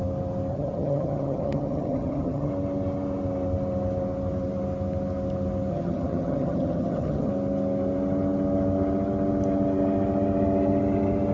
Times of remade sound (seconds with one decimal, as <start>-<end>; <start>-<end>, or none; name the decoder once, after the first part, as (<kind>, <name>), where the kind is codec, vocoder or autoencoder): 0.5-2.5 (vocoder, HiFi-GAN); 5.7-7.3